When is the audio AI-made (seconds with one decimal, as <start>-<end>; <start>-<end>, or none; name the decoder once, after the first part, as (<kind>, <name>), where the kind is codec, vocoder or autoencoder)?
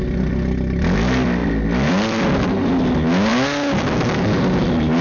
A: none